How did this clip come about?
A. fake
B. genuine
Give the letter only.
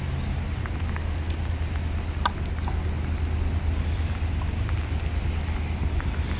B